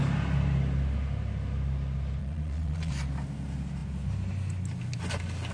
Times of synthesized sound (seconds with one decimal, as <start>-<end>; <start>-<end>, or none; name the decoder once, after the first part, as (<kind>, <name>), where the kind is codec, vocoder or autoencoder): 2.2-2.9 (vocoder, Vocos)